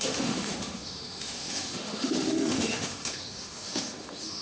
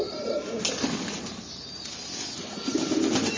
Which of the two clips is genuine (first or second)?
second